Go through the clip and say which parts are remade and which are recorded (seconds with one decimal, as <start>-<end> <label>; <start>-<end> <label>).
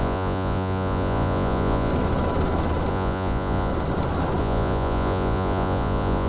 0.0-1.9 remade; 1.9-2.9 recorded; 2.9-3.7 remade; 3.7-4.4 recorded; 4.4-6.3 remade